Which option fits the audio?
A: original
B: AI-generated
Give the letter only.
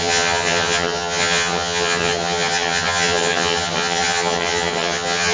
B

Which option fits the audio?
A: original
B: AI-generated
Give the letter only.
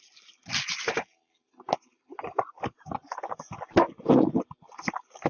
A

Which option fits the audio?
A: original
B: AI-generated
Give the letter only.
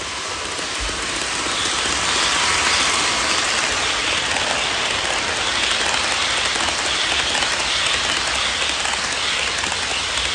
A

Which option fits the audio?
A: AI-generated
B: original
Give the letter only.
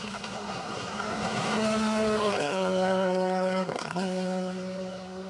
A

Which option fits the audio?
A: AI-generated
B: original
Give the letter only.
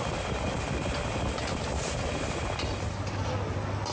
B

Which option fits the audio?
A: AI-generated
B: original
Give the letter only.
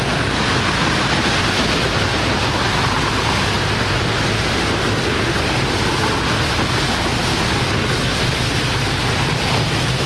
B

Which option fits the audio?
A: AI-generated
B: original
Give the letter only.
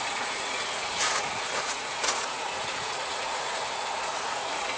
A